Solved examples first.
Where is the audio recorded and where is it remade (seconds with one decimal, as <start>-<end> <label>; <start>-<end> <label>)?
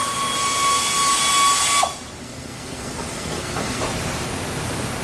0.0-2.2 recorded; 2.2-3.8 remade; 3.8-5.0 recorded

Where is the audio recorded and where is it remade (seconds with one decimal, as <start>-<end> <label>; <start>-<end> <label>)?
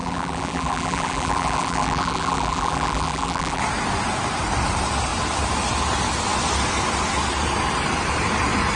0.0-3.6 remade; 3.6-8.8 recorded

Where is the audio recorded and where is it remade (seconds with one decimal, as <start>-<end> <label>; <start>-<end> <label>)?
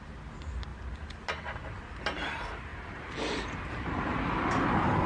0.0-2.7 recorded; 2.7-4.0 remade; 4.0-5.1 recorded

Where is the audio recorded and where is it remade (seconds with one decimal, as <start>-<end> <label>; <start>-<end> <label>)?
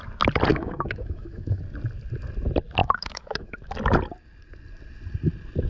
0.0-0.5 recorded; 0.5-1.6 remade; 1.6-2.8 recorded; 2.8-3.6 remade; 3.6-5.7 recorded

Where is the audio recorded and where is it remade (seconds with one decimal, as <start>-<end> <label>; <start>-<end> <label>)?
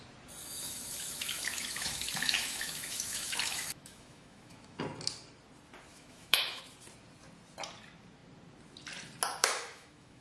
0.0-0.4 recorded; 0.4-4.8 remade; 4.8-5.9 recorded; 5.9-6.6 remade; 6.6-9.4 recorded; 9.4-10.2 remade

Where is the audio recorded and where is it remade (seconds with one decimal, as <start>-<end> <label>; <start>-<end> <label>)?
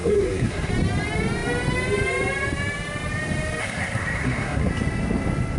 0.0-0.7 remade; 0.7-3.6 recorded; 3.6-4.7 remade; 4.7-5.6 recorded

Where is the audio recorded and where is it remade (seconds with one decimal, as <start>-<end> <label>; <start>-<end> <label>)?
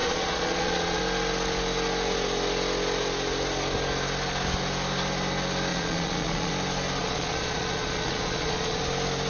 0.0-1.0 remade; 1.0-5.7 recorded; 5.7-6.5 remade; 6.5-7.0 recorded; 7.0-8.8 remade; 8.8-9.3 recorded